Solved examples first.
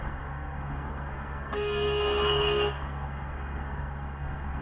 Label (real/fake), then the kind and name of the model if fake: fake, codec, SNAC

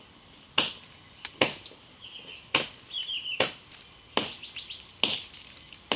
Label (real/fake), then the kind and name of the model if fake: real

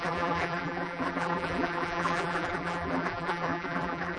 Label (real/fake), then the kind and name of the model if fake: fake, vocoder, BigVGAN v2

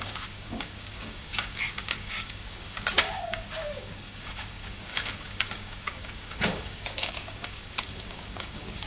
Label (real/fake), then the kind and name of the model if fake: fake, codec, DAC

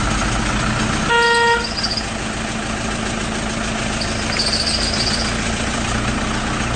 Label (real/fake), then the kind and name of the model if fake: real